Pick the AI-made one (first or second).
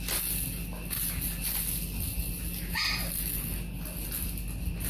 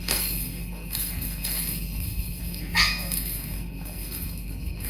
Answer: second